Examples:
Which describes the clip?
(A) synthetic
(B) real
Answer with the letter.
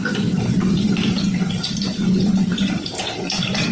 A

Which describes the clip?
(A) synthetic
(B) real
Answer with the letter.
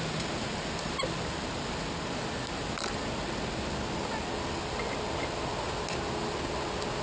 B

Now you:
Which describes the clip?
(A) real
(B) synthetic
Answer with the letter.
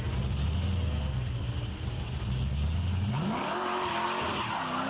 A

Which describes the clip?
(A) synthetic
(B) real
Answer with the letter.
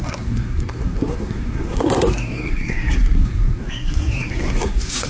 A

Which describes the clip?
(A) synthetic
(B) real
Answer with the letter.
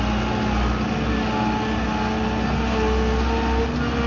B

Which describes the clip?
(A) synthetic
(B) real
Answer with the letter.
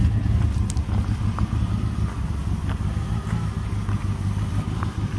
B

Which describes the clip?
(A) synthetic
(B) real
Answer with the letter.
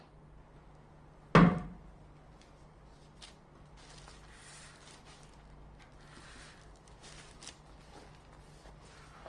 B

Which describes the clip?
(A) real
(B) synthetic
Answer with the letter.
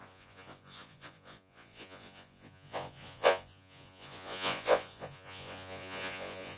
B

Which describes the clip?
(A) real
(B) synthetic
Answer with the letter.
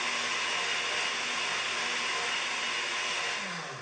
A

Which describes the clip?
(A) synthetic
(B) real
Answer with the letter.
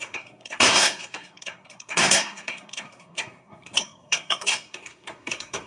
A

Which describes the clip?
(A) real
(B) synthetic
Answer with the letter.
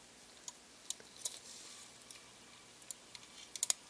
A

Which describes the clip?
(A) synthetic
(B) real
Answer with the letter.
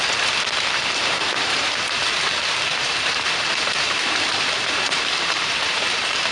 A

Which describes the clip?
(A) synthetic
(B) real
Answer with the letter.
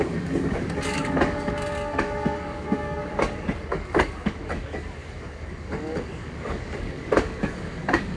A